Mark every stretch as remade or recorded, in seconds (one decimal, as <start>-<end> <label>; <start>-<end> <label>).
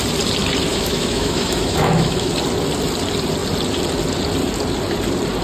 0.0-0.7 recorded; 0.7-2.3 remade; 2.3-5.4 recorded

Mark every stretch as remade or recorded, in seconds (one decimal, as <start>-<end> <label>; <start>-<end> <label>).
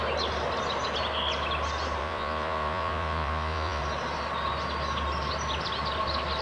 0.0-2.0 recorded; 2.0-3.8 remade; 3.8-6.4 recorded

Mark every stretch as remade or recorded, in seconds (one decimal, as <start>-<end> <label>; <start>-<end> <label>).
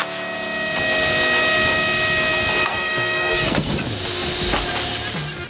0.0-2.6 recorded; 2.6-3.7 remade; 3.7-5.5 recorded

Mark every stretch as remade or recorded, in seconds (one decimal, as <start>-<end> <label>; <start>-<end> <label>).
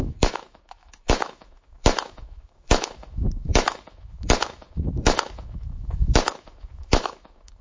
0.0-7.6 remade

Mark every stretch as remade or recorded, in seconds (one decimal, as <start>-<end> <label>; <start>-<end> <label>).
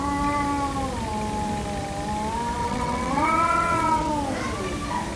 0.0-2.6 recorded; 2.6-4.1 remade; 4.1-5.2 recorded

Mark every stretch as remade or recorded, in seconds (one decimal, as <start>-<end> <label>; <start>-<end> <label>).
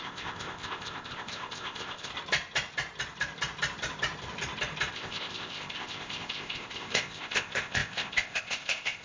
0.0-2.1 remade; 2.1-4.9 recorded; 4.9-9.0 remade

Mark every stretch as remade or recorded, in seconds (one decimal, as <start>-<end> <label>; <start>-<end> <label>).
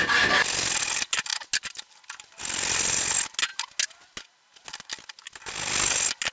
0.0-6.3 recorded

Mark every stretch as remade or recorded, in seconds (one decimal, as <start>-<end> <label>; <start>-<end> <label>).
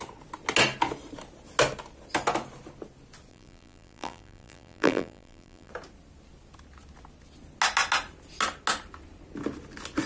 0.0-3.3 recorded; 3.3-5.7 remade; 5.7-10.1 recorded